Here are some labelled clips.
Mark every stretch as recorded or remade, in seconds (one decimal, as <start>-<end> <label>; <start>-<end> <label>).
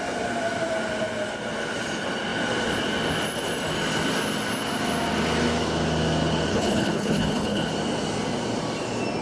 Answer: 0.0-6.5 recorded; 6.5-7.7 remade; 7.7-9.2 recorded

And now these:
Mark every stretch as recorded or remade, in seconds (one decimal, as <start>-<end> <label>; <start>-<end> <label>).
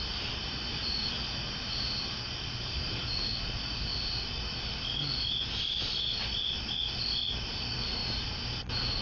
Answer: 0.0-9.0 recorded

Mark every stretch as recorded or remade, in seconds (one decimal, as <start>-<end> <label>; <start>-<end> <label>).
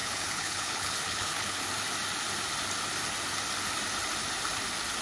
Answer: 0.0-1.6 remade; 1.6-5.0 recorded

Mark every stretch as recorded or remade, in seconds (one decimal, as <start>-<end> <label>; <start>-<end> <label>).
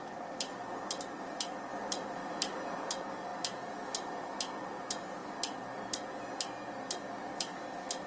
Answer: 0.0-8.1 recorded